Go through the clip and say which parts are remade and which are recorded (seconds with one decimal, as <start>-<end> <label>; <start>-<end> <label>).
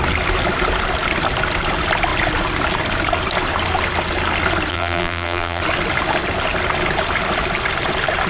0.0-4.7 recorded; 4.7-5.6 remade; 5.6-8.3 recorded